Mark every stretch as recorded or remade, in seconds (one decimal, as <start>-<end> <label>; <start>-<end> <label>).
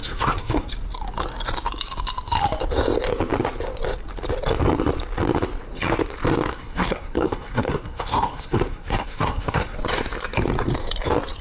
0.0-0.7 remade; 0.7-6.5 recorded; 6.5-9.8 remade; 9.8-11.4 recorded